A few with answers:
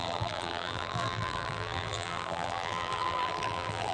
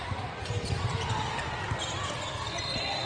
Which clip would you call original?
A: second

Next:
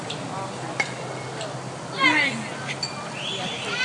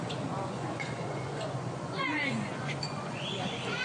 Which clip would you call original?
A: first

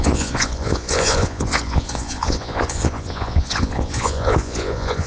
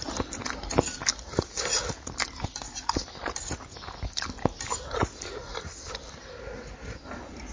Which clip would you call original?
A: second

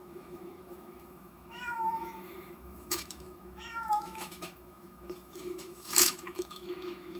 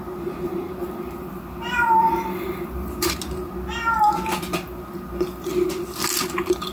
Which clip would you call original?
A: second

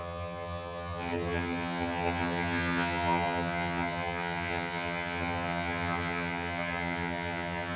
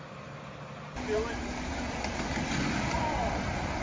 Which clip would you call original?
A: second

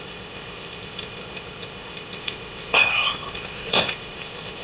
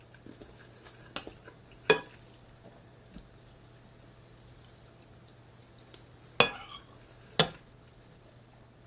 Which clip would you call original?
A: second